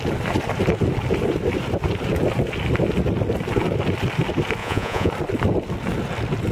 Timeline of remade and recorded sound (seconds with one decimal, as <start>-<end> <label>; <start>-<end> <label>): 0.0-4.6 recorded; 4.6-5.1 remade; 5.1-6.5 recorded